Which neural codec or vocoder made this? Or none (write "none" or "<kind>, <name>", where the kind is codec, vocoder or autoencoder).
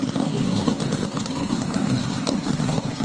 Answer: codec, SNAC